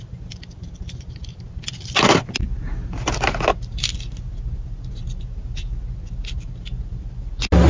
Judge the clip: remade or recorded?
recorded